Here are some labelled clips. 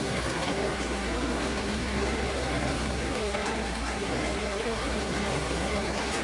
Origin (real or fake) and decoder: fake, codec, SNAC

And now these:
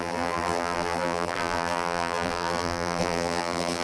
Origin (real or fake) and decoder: fake, vocoder, BigVGAN v2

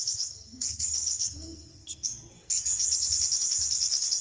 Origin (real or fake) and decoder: fake, codec, SNAC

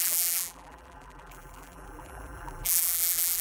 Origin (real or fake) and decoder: fake, vocoder, BigVGAN v2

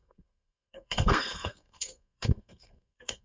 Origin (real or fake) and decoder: fake, codec, SNAC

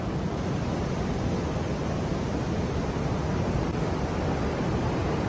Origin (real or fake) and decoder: real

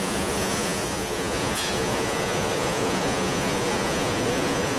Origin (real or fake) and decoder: fake, vocoder, Vocos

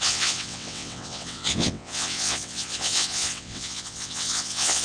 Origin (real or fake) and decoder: fake, vocoder, WaveNeXt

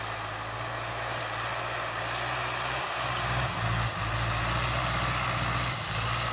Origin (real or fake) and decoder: real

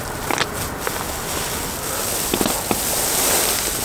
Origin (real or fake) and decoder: real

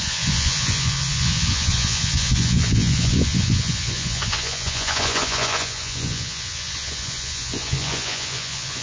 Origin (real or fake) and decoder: fake, vocoder, Vocos